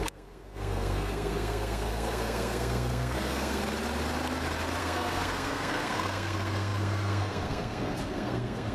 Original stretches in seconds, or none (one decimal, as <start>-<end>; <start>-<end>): 3.6-4.8